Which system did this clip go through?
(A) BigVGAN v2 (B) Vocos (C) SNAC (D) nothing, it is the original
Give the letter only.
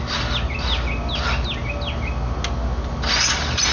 D